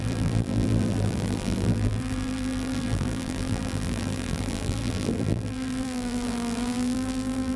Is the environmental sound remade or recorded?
remade